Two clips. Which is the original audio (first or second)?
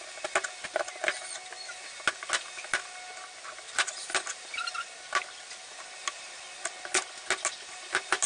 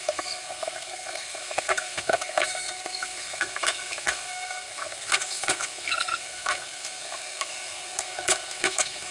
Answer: first